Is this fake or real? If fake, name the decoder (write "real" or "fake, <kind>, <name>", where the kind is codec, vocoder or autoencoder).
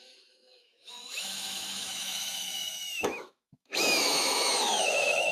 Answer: fake, autoencoder, DAC-VAE